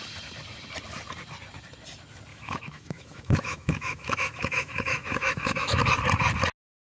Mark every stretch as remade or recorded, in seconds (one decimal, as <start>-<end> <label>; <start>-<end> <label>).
0.0-2.3 recorded; 2.3-5.8 remade; 5.8-6.8 recorded